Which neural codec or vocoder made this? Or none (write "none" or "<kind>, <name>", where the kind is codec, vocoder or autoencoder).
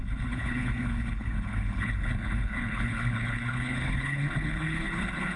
codec, HILCodec